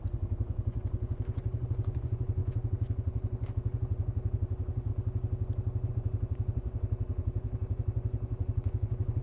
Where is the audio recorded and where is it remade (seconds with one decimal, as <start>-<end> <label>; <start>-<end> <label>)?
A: 0.0-4.9 remade; 4.9-5.9 recorded; 5.9-9.2 remade